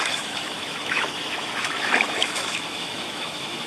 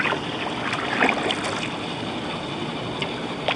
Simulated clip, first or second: first